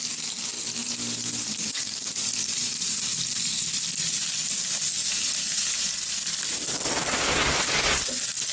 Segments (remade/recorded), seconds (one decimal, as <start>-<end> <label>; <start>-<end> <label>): 0.0-0.8 recorded; 0.8-3.2 remade; 3.2-5.0 recorded; 5.0-6.1 remade; 6.1-8.5 recorded